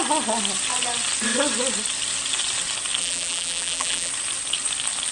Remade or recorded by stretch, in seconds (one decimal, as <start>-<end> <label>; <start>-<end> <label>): 0.0-3.0 recorded; 3.0-4.1 remade; 4.1-5.1 recorded